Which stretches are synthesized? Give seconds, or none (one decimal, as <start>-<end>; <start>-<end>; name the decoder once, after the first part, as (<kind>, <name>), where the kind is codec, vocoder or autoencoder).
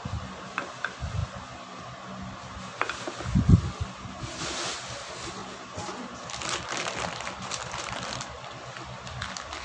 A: none